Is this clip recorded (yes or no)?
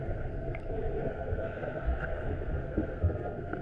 no